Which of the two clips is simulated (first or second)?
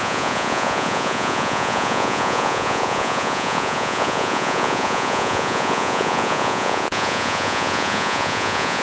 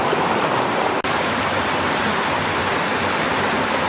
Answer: first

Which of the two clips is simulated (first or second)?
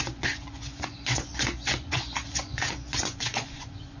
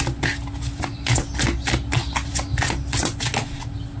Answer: first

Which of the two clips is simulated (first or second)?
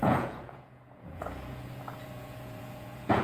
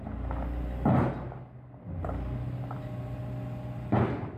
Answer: first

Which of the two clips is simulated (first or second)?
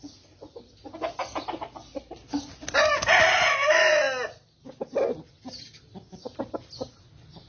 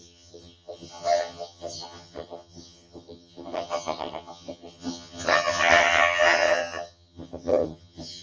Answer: second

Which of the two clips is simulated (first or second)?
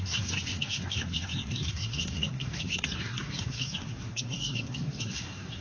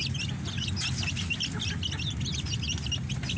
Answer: first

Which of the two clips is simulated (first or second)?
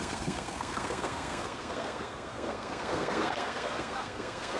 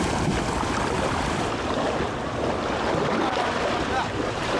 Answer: first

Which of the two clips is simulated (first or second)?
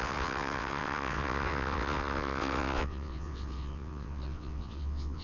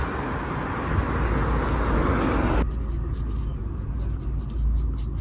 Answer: first